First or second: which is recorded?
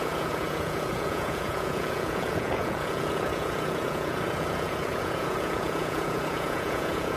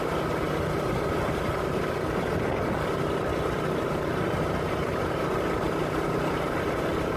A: second